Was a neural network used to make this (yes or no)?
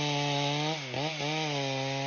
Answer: no